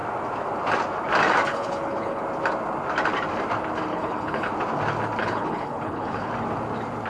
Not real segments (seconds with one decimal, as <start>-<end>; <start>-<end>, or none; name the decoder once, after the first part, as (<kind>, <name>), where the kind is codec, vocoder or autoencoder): 1.5-2.2 (codec, HILCodec); 3.9-4.5; 5.2-6.3